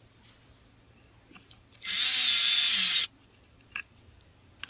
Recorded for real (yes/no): yes